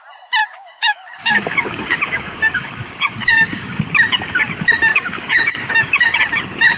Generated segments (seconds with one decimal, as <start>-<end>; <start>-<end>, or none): 0.4-3.8; 4.9-6.2

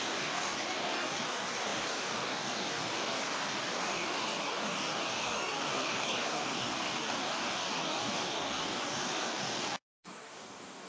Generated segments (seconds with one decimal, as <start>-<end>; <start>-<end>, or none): 0.0-10.9

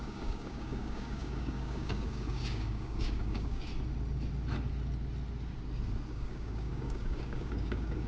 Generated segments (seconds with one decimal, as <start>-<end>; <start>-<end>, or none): 0.0-3.7; 6.1-8.1

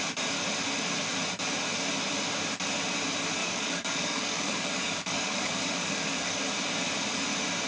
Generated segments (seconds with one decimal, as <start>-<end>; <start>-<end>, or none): 3.4-6.4

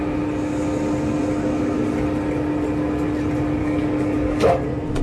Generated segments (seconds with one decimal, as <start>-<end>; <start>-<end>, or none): 3.6-4.5

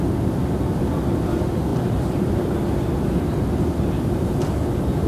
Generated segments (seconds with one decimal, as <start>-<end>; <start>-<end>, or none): none

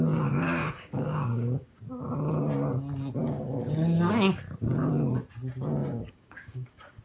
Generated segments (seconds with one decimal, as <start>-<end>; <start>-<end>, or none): 0.6-1.8; 3.2-4.4; 5.8-7.0